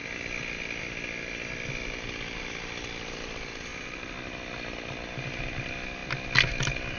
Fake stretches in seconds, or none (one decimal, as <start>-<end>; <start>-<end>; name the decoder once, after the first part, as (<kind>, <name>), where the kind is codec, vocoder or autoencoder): none